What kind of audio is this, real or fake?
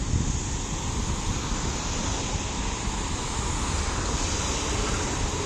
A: real